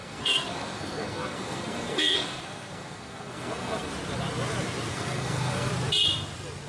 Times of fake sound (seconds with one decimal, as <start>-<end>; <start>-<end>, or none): 0.0-3.9; 4.9-5.7